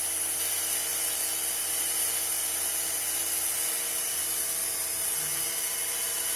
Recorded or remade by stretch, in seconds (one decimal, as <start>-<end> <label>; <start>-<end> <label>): 0.0-6.4 recorded